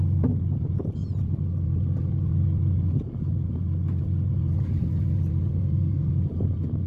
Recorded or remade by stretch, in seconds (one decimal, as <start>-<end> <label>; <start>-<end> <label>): 0.0-5.5 recorded; 5.5-6.1 remade; 6.1-6.9 recorded